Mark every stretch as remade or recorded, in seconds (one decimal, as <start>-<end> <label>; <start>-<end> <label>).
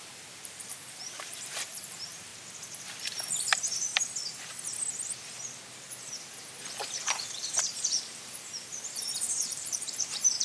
0.0-2.3 remade; 2.3-3.1 recorded; 3.1-3.9 remade; 3.9-6.9 recorded; 6.9-10.4 remade